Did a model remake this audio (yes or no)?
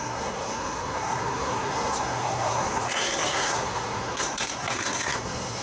yes